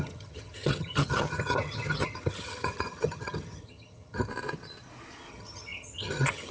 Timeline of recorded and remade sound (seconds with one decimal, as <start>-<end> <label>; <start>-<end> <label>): 0.0-4.3 remade; 4.3-5.3 recorded; 5.3-6.5 remade